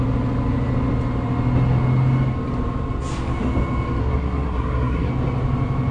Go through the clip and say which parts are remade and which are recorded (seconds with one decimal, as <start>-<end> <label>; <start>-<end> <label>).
0.0-4.0 recorded; 4.0-5.1 remade; 5.1-5.9 recorded